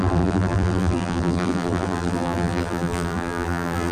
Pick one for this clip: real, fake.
fake